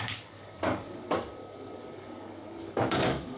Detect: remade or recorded remade